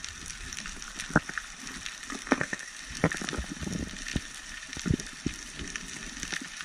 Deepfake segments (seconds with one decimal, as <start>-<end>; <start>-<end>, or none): 2.2-2.7